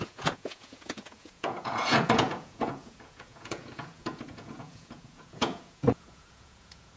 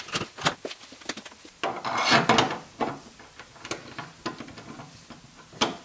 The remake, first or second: first